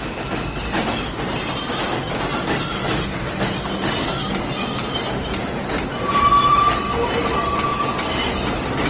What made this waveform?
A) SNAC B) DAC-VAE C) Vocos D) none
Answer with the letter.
D